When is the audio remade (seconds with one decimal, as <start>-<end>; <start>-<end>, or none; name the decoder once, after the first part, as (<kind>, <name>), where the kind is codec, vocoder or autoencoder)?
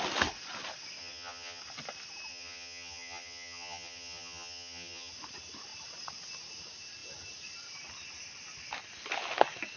1.0-1.6 (vocoder, HiFi-GAN); 2.3-5.1